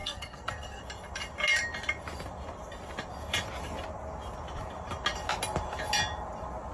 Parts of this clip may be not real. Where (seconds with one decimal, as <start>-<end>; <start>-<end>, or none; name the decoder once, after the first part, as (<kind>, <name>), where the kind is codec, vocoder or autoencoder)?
0.0-0.8 (codec, SNAC)